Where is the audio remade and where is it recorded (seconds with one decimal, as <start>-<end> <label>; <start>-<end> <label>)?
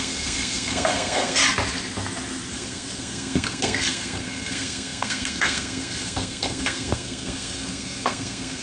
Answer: 0.0-1.4 remade; 1.4-2.5 recorded; 2.5-8.6 remade